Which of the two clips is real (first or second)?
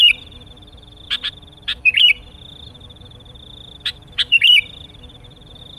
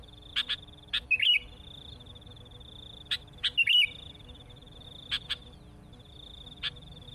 second